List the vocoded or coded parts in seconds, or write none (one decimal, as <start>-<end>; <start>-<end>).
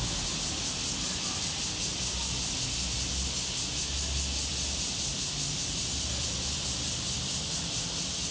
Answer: 1.9-2.6; 4.5-7.5